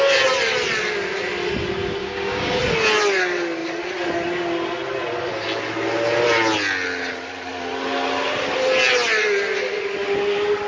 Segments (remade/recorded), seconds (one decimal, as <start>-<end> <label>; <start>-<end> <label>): 0.0-2.0 recorded; 2.0-2.6 remade; 2.6-10.7 recorded

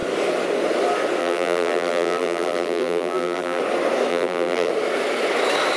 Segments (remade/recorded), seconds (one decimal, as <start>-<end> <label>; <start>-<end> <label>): 0.0-1.2 recorded; 1.2-3.6 remade; 3.6-4.1 recorded; 4.1-4.7 remade; 4.7-5.8 recorded